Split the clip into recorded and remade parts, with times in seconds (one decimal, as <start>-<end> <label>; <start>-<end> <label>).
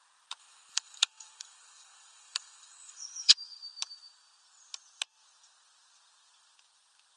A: 0.0-0.4 recorded; 0.4-3.3 remade; 3.3-7.2 recorded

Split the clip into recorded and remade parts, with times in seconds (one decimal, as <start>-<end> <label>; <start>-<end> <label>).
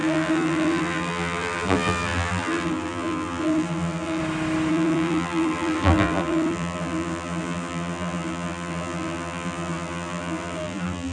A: 0.0-4.2 remade; 4.2-4.7 recorded; 4.7-11.1 remade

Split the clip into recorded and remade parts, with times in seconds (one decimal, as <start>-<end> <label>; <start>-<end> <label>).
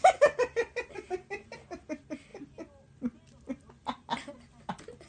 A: 0.0-5.1 recorded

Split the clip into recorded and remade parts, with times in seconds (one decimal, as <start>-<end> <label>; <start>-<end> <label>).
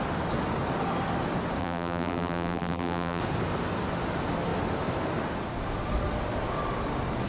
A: 0.0-1.6 recorded; 1.6-3.2 remade; 3.2-7.3 recorded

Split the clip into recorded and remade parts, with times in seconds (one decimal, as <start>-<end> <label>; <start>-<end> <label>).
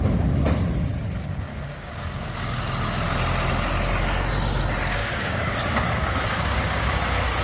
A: 0.0-1.5 recorded; 1.5-2.6 remade; 2.6-5.0 recorded; 5.0-7.0 remade; 7.0-7.4 recorded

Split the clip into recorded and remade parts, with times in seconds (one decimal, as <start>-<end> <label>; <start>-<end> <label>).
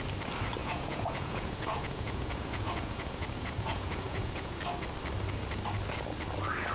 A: 0.0-0.6 recorded; 0.6-4.6 remade; 4.6-6.7 recorded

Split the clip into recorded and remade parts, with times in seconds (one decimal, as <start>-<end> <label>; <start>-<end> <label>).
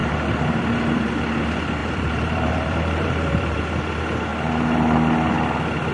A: 0.0-1.1 remade; 1.1-1.8 recorded; 1.8-3.6 remade; 3.6-5.9 recorded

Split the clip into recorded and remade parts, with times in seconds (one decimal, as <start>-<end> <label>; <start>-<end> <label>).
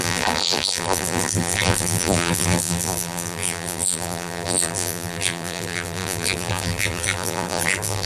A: 0.0-8.1 remade